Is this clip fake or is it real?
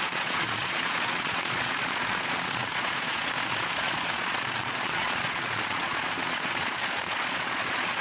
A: fake